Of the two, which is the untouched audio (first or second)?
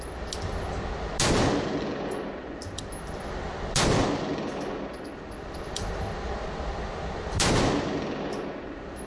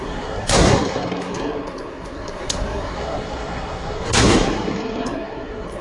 first